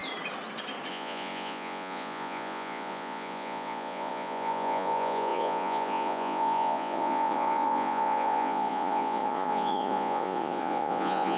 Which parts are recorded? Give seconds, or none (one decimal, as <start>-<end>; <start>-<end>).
0.0-0.9